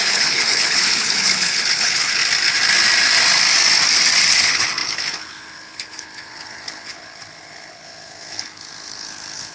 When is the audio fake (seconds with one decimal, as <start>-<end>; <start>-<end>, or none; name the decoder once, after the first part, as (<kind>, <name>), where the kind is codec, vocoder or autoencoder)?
0.0-2.2 (codec, HILCodec); 4.3-9.5